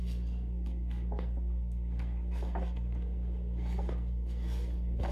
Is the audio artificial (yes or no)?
yes